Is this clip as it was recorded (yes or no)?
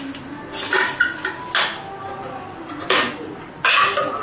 yes